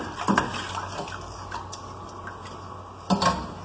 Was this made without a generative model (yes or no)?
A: yes